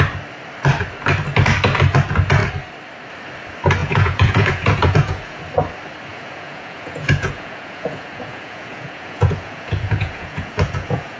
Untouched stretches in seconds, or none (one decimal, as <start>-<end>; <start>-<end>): 0.0-3.8; 5.4-6.1